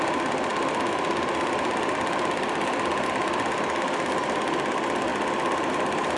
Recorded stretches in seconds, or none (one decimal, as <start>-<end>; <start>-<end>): 0.0-6.2